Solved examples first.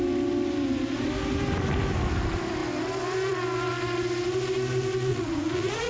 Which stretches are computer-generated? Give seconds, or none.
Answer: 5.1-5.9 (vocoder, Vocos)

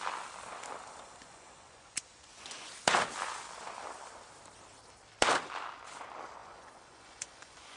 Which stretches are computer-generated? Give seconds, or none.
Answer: 1.2-2.7 (vocoder, Vocos); 6.4-7.8

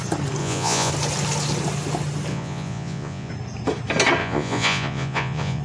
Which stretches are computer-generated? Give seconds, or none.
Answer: 0.4-0.9 (vocoder, Vocos); 2.3-3.3; 4.2-5.6

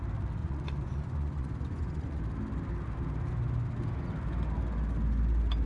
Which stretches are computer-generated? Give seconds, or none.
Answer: 0.4-2.2 (vocoder, Vocos)

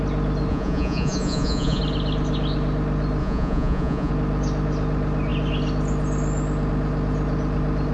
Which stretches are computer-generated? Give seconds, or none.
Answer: 0.5-1.8 (vocoder, Vocos); 3.2-4.1

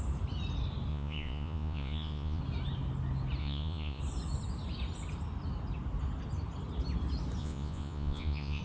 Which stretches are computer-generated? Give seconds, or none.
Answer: 0.9-2.4 (vocoder, Vocos); 3.4-4.0; 7.4-8.6

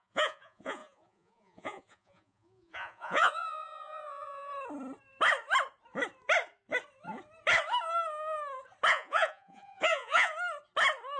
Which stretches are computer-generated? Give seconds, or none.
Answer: 0.0-4.5 (vocoder, Vocos); 8.9-10.3

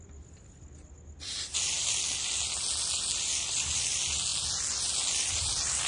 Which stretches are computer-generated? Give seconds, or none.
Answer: none